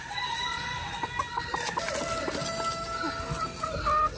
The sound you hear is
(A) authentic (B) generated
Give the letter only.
A